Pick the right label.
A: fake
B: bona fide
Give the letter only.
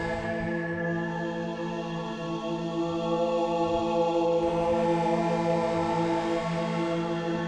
B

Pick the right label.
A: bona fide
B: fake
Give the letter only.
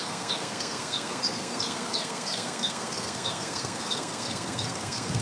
B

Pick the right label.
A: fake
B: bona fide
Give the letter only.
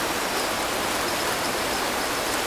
B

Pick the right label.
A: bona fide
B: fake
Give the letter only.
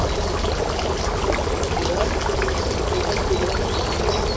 A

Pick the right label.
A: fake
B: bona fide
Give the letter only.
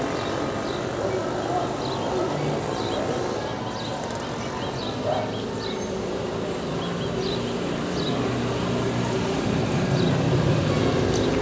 B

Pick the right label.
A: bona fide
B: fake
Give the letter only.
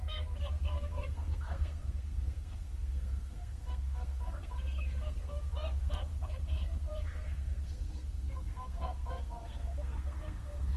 B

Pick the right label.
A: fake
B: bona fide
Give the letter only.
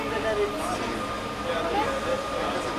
B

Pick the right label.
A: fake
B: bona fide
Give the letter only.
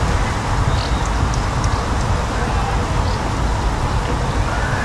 B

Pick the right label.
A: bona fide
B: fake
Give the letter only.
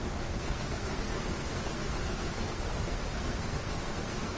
B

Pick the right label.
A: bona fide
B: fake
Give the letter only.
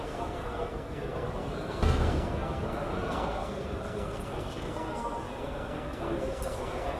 B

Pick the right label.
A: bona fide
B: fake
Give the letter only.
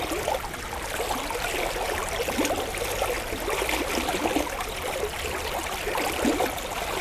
A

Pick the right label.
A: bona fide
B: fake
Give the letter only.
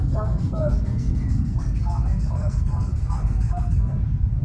B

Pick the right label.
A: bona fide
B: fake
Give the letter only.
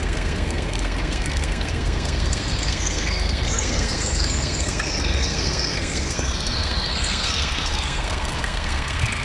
B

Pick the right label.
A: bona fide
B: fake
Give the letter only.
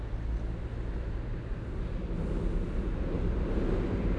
A